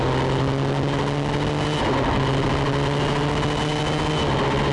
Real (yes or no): yes